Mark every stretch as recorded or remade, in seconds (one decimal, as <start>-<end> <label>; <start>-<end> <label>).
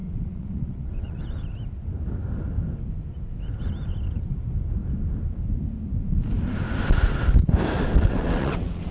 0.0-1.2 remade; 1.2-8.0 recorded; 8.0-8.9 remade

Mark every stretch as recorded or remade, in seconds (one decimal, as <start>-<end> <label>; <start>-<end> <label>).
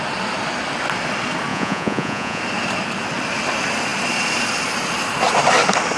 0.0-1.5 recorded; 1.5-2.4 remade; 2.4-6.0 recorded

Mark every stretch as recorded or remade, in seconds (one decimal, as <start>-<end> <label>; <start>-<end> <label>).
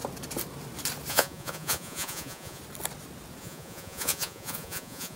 0.0-1.1 recorded; 1.1-2.6 remade; 2.6-3.4 recorded; 3.4-5.2 remade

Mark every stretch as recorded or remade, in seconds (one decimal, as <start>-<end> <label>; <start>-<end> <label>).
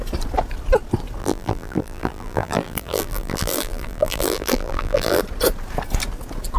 0.0-1.2 recorded; 1.2-5.2 remade; 5.2-6.6 recorded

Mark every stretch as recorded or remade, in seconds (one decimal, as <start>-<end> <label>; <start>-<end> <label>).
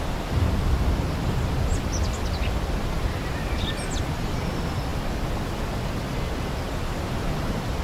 0.0-7.8 recorded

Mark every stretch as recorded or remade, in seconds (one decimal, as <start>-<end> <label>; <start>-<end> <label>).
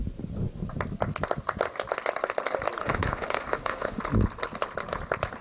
0.0-2.8 recorded; 2.8-4.0 remade; 4.0-5.4 recorded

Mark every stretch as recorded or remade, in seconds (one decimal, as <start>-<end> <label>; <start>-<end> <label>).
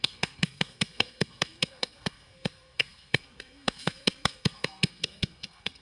0.0-5.8 remade